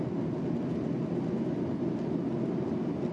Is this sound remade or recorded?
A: recorded